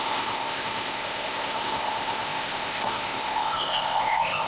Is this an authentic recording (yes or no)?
no